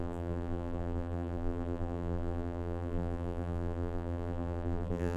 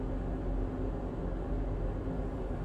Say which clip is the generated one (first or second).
first